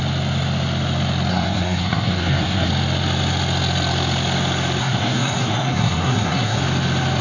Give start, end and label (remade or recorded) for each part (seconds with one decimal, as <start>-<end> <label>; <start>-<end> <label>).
0.0-1.3 recorded; 1.3-2.7 remade; 2.7-4.8 recorded; 4.8-6.6 remade; 6.6-7.2 recorded